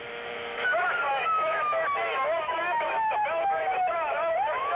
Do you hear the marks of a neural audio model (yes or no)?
yes